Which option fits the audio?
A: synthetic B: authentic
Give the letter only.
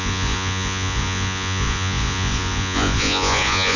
A